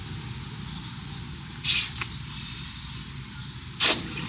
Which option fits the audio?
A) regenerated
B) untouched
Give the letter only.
A